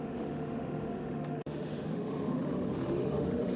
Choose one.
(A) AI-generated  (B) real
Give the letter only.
A